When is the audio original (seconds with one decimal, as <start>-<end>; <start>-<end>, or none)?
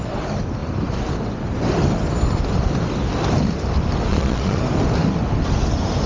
0.0-4.1; 4.6-6.1